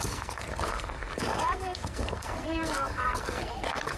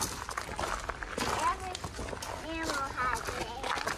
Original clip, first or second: second